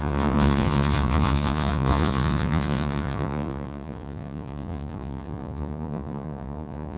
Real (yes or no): no